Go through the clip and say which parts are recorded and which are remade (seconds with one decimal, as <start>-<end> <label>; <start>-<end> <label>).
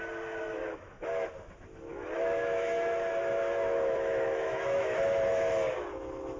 0.0-0.6 recorded; 0.6-1.3 remade; 1.3-1.9 recorded; 1.9-5.5 remade; 5.5-6.4 recorded